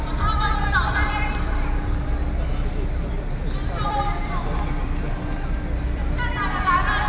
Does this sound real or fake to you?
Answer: real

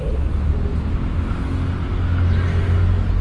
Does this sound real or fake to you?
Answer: real